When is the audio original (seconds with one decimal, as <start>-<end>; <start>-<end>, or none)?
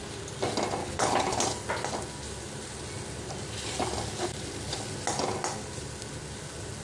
0.0-0.8; 1.4-6.8